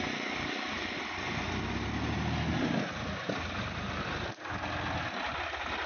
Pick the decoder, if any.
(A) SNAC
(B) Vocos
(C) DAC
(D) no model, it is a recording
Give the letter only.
D